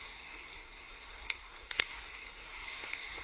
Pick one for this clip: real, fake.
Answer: fake